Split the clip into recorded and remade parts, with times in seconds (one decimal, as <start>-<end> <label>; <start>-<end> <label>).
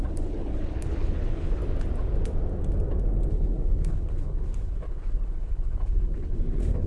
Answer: 0.0-1.6 remade; 1.6-3.3 recorded; 3.3-6.9 remade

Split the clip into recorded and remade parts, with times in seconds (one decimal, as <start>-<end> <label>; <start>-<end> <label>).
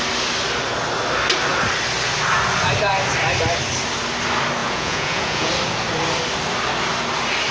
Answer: 0.0-4.6 recorded; 4.6-5.5 remade; 5.5-7.5 recorded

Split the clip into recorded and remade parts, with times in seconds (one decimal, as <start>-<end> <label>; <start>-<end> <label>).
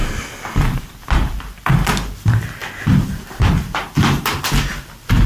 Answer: 0.0-5.3 recorded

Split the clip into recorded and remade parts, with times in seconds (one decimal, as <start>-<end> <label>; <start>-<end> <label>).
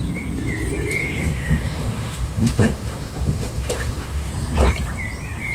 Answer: 0.0-1.0 recorded; 1.0-4.3 remade; 4.3-5.5 recorded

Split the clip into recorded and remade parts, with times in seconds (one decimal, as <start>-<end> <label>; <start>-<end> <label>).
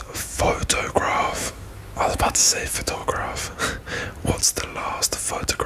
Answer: 0.0-0.6 remade; 0.6-1.2 recorded; 1.2-3.0 remade; 3.0-5.7 recorded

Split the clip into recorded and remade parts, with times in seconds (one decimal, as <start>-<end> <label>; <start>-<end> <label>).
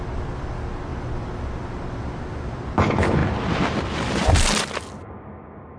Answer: 0.0-5.8 recorded